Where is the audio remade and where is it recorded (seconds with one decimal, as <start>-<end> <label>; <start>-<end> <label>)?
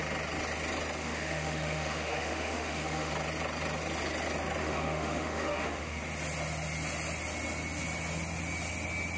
0.0-1.0 recorded; 1.0-3.1 remade; 3.1-4.6 recorded; 4.6-6.0 remade; 6.0-9.2 recorded